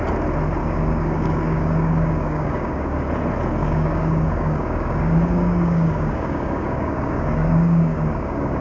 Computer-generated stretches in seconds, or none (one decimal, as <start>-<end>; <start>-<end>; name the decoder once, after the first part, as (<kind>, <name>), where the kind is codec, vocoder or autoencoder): 0.6-3.0 (codec, DAC); 3.6-8.6